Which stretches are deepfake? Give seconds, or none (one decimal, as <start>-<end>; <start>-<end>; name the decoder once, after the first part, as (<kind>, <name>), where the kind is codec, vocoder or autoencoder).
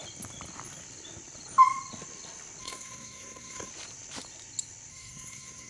2.6-3.7 (codec, SNAC); 4.9-5.7